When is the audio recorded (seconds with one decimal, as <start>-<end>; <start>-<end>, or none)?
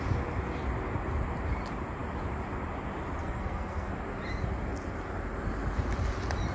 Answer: 0.0-3.2; 3.9-6.5